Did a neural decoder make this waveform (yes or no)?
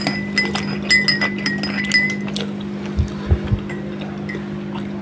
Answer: no